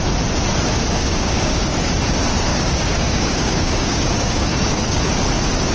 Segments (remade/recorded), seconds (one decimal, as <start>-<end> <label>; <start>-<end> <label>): 0.0-1.0 recorded; 1.0-1.9 remade; 1.9-2.5 recorded; 2.5-5.0 remade; 5.0-5.7 recorded